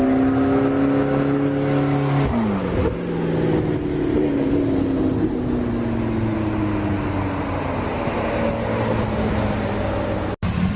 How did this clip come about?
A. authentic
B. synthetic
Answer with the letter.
A